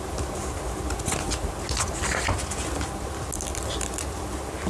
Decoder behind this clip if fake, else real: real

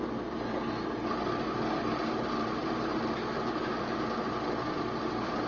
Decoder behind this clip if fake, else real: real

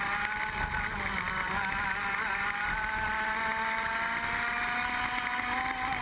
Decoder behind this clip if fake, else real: real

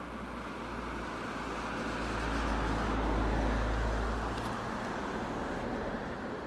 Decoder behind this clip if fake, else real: real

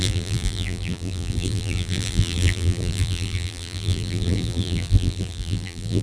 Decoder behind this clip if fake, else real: fake, vocoder, BigVGAN v2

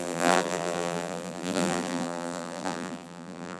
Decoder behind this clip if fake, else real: fake, vocoder, BigVGAN v2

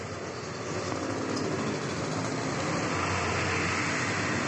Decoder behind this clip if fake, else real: real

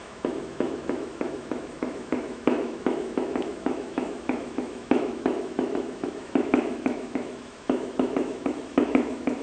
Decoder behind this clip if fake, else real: fake, autoencoder, DAC-VAE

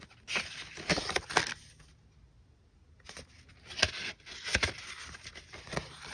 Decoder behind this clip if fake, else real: real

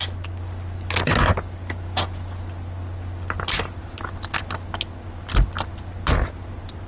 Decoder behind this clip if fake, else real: real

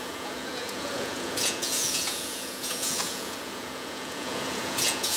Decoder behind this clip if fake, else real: fake, vocoder, Vocos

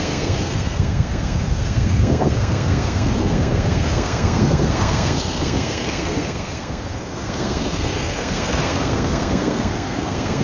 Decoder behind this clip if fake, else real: fake, codec, SNAC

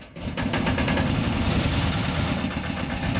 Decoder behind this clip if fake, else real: real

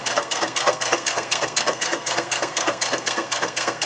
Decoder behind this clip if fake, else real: fake, codec, SNAC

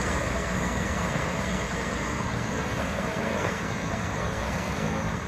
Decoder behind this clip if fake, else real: fake, codec, SNAC